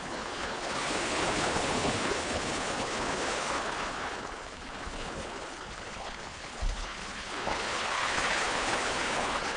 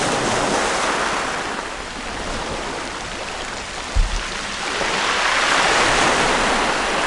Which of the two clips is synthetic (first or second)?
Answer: first